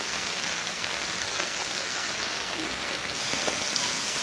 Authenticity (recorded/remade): remade